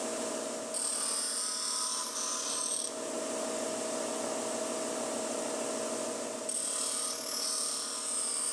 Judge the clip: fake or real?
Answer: real